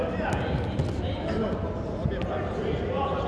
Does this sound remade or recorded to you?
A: recorded